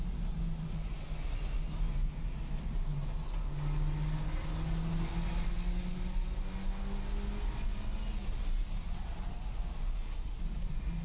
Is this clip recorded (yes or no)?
yes